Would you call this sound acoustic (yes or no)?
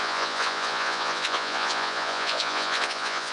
no